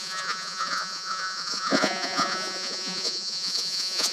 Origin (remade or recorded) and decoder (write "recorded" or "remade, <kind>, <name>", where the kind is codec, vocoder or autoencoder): remade, vocoder, Vocos